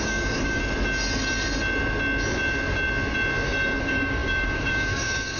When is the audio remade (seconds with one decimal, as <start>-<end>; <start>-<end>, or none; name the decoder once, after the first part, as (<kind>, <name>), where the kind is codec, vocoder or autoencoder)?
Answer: 0.0-0.6 (codec, DAC); 3.8-5.4